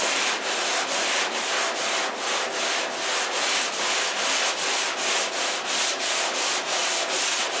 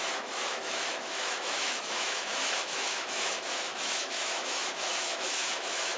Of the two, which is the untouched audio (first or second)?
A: first